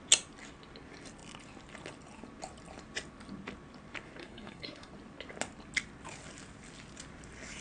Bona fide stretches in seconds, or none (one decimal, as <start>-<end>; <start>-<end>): 0.0-4.2; 4.9-7.6